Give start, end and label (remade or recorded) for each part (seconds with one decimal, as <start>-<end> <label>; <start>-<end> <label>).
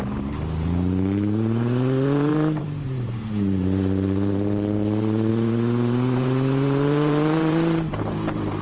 0.0-8.6 remade